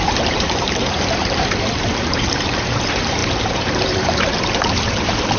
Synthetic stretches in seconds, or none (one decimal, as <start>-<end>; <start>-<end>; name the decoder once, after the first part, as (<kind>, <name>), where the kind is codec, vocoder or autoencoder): 0.0-5.4 (vocoder, BigVGAN v2)